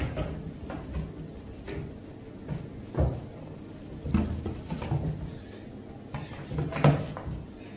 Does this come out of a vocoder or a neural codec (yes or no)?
no